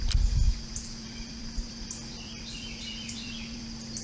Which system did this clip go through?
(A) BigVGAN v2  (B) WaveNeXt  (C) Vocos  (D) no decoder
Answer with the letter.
A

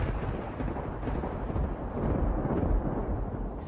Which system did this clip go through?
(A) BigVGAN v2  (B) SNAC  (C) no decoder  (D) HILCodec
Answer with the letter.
A